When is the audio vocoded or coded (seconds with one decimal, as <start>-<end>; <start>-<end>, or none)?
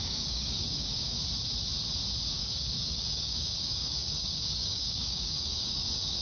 0.0-1.2; 2.4-6.2